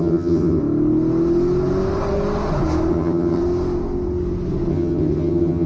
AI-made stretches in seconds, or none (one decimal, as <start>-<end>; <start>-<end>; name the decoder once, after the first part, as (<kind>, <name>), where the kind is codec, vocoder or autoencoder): 0.0-0.6 (vocoder, HiFi-GAN); 2.9-3.4; 4.7-5.7